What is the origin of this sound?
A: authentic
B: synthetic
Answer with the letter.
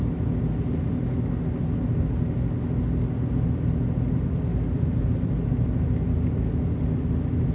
A